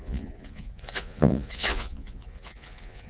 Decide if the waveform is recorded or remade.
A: remade